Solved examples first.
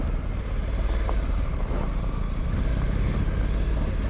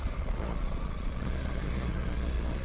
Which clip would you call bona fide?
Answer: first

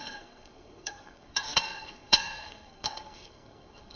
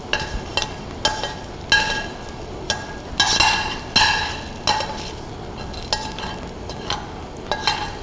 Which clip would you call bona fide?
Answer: second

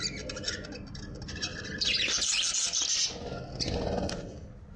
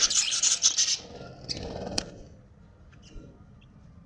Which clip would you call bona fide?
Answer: first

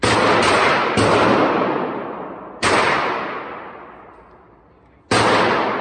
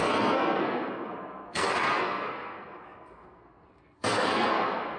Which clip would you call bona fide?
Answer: first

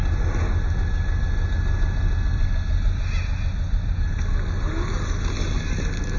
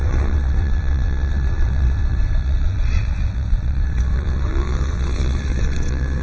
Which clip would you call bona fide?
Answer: first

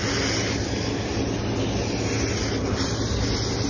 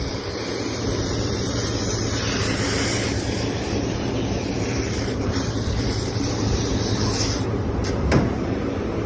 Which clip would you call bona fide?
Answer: first